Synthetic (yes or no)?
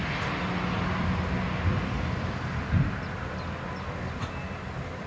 no